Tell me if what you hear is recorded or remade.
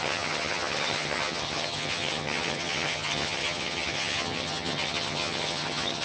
remade